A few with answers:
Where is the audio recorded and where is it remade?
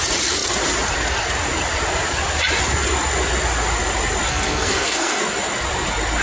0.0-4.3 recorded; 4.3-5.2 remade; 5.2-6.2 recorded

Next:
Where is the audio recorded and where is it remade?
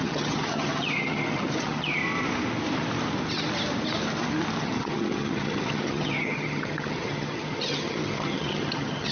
0.0-2.0 remade; 2.0-4.6 recorded; 4.6-9.1 remade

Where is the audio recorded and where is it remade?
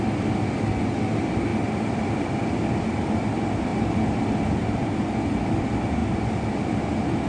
0.0-7.3 recorded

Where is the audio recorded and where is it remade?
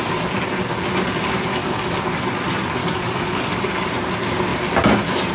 0.0-1.5 recorded; 1.5-2.0 remade; 2.0-2.8 recorded; 2.8-3.6 remade; 3.6-5.3 recorded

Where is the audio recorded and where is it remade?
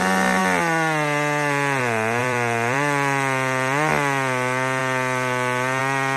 0.0-2.2 recorded; 2.2-3.9 remade; 3.9-6.2 recorded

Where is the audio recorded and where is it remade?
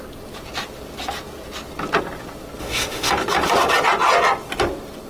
0.0-2.6 recorded; 2.6-3.1 remade; 3.1-5.1 recorded